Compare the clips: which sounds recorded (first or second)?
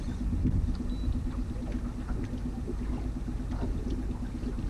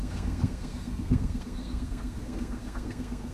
first